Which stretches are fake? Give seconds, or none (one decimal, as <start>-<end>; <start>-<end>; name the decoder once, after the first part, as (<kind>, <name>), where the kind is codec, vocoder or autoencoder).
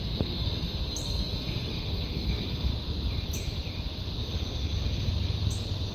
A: 0.0-2.7 (codec, SNAC); 4.2-5.1